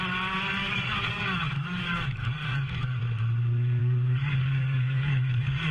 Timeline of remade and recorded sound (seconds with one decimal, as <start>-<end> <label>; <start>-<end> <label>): 0.0-0.6 recorded; 0.6-3.0 remade; 3.0-3.8 recorded; 3.8-5.7 remade